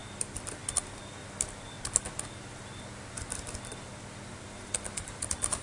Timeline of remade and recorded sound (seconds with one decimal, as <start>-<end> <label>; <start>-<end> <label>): 0.0-0.6 remade; 0.6-5.6 recorded